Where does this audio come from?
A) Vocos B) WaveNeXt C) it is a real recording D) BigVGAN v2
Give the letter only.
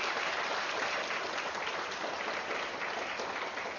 C